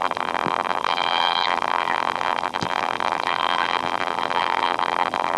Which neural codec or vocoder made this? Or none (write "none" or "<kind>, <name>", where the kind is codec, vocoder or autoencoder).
vocoder, BigVGAN v2